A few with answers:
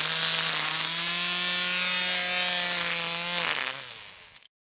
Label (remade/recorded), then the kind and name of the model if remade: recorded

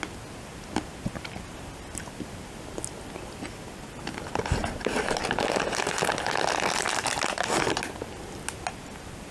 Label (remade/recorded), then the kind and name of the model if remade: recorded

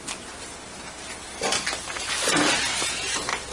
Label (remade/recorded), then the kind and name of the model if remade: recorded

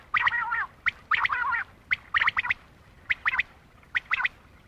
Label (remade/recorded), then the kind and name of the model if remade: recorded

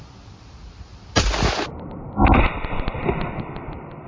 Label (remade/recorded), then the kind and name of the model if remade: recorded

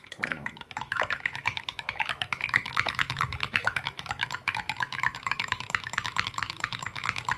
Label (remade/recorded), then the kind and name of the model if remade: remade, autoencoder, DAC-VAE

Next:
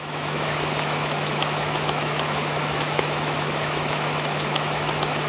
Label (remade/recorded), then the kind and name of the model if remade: remade, autoencoder, DAC-VAE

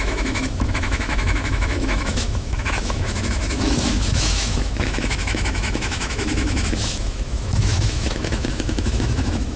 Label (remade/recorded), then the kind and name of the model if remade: remade, autoencoder, DAC-VAE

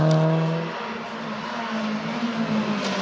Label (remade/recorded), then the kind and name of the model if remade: recorded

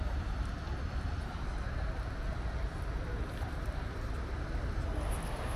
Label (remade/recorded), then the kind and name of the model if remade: recorded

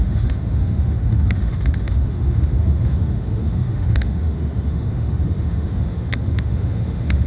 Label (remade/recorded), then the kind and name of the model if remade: remade, autoencoder, DAC-VAE